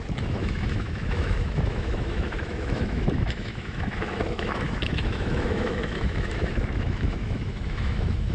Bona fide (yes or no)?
no